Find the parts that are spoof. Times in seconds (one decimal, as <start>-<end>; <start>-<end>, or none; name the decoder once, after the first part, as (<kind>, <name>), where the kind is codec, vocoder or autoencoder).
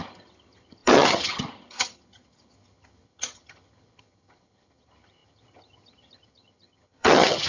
0.0-7.5 (vocoder, HiFi-GAN)